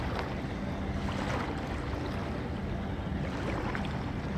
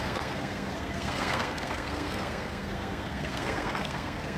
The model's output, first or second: second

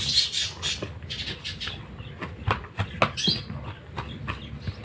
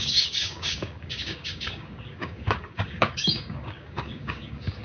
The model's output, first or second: second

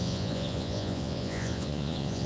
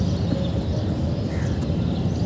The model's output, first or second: first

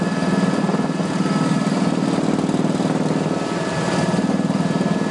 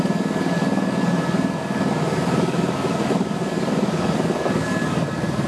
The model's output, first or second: second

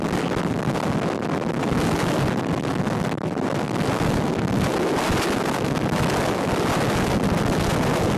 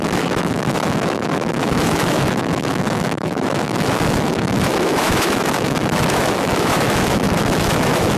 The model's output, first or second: second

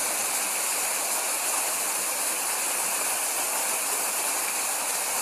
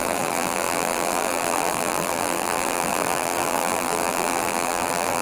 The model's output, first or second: second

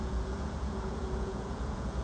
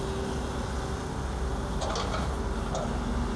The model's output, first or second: first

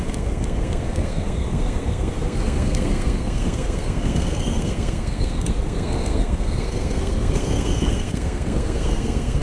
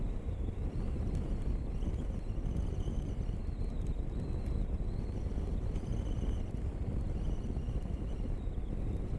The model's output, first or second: first